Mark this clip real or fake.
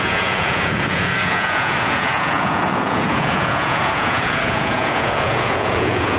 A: fake